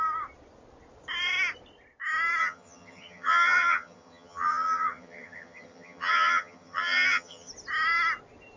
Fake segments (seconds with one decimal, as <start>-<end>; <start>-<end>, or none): 2.4-7.5